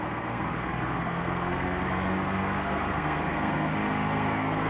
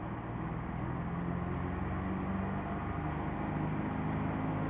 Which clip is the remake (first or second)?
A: first